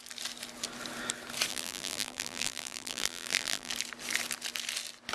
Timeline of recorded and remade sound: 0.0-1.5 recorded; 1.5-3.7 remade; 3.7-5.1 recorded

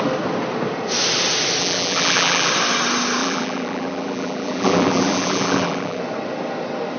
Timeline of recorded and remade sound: 0.0-1.6 recorded; 1.6-2.5 remade; 2.5-3.2 recorded; 3.2-6.0 remade; 6.0-7.0 recorded

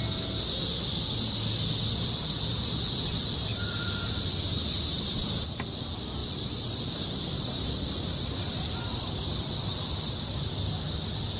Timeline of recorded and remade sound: 0.0-3.5 recorded; 3.5-4.3 remade; 4.3-6.2 recorded; 6.2-9.1 remade; 9.1-11.4 recorded

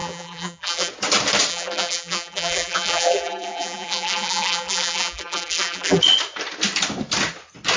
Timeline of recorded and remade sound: 0.0-0.9 remade; 0.9-1.5 recorded; 1.5-6.0 remade; 6.0-7.8 recorded

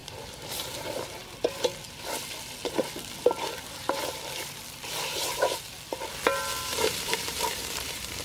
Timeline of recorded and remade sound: 0.0-0.6 remade; 0.6-6.7 recorded; 6.7-8.2 remade

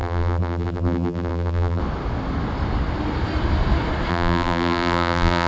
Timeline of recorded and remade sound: 0.0-1.8 remade; 1.8-4.1 recorded; 4.1-5.5 remade